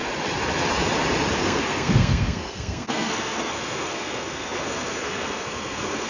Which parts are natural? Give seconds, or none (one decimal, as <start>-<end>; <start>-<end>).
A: 0.0-1.4